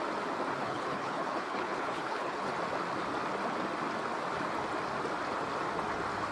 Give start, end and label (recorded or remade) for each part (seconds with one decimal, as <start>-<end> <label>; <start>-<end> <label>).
0.0-0.6 recorded; 0.6-2.5 remade; 2.5-6.3 recorded